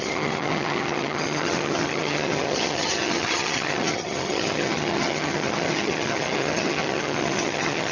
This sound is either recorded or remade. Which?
remade